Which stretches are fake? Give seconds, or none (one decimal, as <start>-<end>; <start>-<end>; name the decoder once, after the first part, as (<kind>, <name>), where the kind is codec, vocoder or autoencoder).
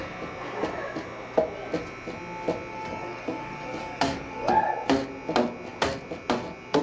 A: 2.7-4.7 (codec, DAC)